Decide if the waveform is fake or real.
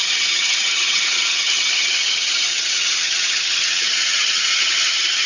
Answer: fake